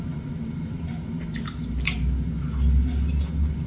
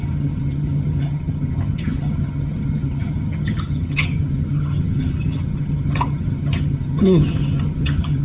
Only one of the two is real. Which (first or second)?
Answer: first